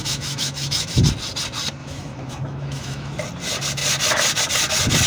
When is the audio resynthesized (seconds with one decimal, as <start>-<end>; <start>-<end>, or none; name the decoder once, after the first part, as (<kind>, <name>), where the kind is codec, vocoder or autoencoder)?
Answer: 0.0-1.0 (autoencoder, DAC-VAE); 1.8-3.2